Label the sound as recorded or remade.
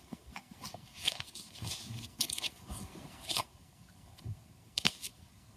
remade